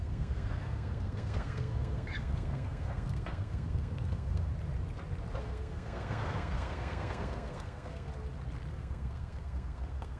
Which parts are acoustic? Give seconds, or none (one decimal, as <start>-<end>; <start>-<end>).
4.5-5.4; 8.1-8.7